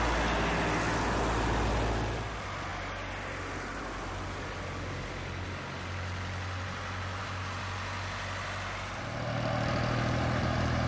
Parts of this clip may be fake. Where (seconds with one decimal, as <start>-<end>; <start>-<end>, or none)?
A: none